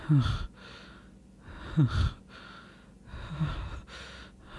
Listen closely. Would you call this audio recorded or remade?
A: recorded